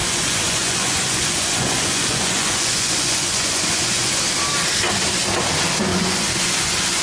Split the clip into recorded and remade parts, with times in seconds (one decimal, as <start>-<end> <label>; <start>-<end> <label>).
0.0-4.2 remade; 4.2-5.9 recorded; 5.9-7.0 remade

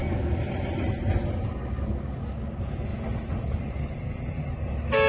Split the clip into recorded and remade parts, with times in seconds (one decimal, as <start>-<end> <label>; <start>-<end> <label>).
0.0-2.9 recorded; 2.9-4.4 remade; 4.4-5.1 recorded

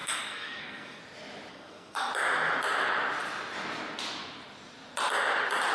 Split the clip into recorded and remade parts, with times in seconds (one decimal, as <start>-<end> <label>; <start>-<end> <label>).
0.0-1.0 remade; 1.0-1.5 recorded; 1.5-2.1 remade; 2.1-5.7 recorded